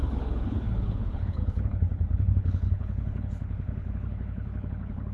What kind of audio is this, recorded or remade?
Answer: remade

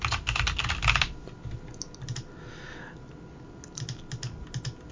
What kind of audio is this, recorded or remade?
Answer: recorded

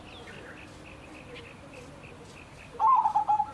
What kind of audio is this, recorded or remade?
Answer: recorded